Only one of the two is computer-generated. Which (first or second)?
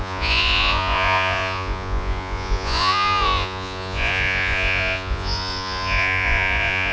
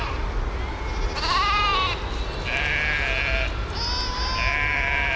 first